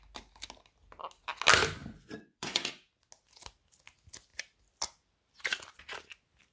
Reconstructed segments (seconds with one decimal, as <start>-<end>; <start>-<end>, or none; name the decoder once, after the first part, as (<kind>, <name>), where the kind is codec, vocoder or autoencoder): 1.8-2.7 (vocoder, Vocos)